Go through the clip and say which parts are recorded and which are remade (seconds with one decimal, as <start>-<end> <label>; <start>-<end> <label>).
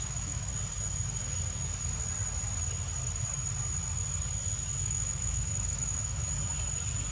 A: 0.0-0.5 remade; 0.5-4.8 recorded; 4.8-6.2 remade; 6.2-7.1 recorded